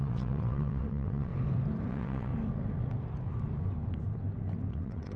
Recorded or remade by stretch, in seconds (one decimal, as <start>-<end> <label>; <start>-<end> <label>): 0.0-1.3 remade; 1.3-1.9 recorded; 1.9-2.3 remade; 2.3-4.7 recorded; 4.7-5.2 remade